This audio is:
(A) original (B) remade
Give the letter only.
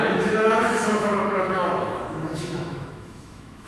B